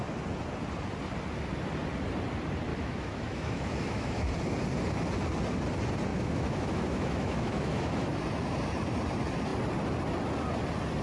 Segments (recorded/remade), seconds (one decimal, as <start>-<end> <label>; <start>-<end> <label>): 0.0-2.7 recorded; 2.7-4.3 remade; 4.3-6.1 recorded; 6.1-8.2 remade; 8.2-11.0 recorded